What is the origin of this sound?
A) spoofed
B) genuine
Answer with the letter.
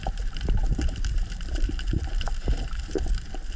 A